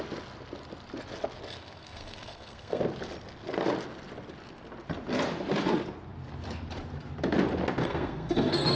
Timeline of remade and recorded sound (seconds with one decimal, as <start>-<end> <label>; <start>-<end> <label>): 0.0-1.5 recorded; 1.5-2.8 remade; 2.8-7.8 recorded; 7.8-8.8 remade